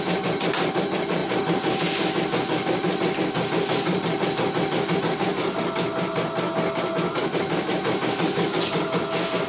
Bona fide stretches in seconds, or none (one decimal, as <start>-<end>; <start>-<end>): 0.0-9.5